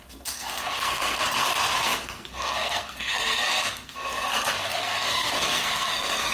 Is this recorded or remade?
remade